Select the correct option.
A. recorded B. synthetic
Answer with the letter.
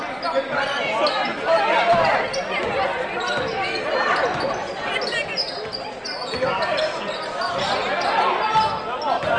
A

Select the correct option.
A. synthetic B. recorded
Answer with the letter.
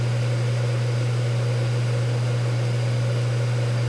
B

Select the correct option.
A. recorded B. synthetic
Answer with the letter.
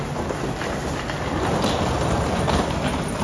A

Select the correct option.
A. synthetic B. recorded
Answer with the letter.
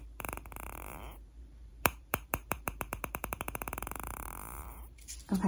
A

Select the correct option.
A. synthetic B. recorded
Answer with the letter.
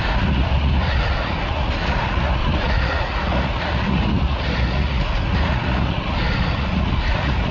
A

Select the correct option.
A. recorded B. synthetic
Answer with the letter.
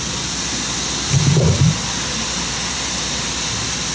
A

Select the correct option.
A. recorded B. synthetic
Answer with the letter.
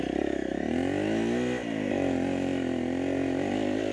A